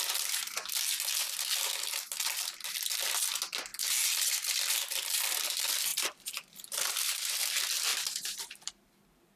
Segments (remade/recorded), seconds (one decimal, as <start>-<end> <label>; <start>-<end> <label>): 0.0-5.9 recorded; 5.9-7.2 remade; 7.2-7.9 recorded; 7.9-9.4 remade